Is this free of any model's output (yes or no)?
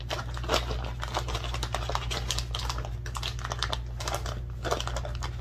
yes